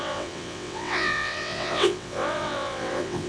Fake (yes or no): yes